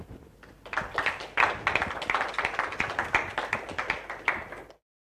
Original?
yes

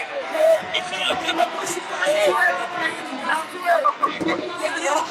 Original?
no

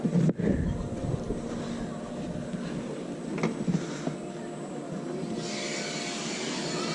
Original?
yes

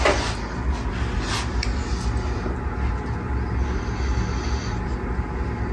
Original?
yes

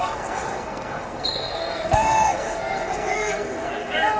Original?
no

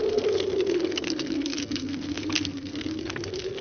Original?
no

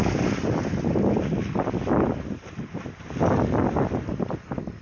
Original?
yes